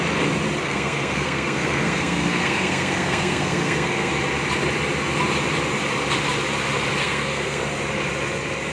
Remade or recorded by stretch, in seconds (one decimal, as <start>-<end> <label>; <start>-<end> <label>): 0.0-0.6 recorded; 0.6-4.1 remade; 4.1-7.0 recorded; 7.0-7.6 remade; 7.6-8.7 recorded